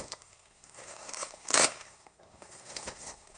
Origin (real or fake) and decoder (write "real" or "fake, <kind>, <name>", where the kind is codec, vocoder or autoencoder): fake, codec, SNAC